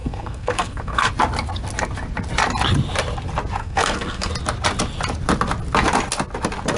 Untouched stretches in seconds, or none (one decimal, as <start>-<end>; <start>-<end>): 1.1-3.6; 4.3-6.8